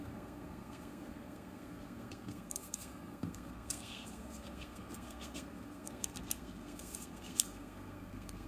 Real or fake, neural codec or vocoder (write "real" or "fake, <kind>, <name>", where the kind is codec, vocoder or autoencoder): fake, codec, SNAC